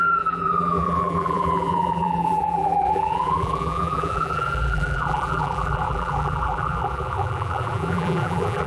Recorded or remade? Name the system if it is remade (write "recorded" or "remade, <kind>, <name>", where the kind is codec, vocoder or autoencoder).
remade, vocoder, BigVGAN v2